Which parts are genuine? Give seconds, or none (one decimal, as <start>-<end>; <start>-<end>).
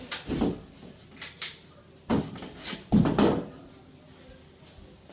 0.0-5.1